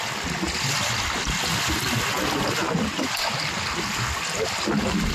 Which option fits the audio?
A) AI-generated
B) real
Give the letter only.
B